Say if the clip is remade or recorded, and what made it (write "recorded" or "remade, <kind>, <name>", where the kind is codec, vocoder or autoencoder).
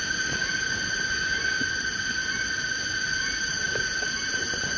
recorded